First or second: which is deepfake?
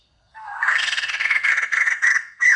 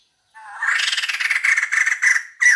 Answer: first